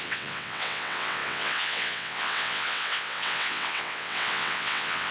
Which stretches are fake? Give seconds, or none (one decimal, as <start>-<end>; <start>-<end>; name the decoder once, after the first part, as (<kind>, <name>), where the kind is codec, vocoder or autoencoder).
0.0-5.1 (vocoder, WaveNeXt)